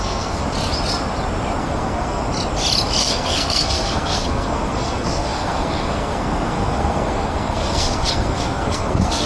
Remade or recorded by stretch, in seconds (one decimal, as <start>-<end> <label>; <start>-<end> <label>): 0.0-0.4 remade; 0.4-1.6 recorded; 1.6-2.2 remade; 2.2-3.0 recorded; 3.0-9.3 remade